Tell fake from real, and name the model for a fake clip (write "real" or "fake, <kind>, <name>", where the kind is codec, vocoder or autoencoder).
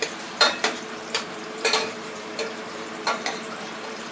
fake, vocoder, BigVGAN v2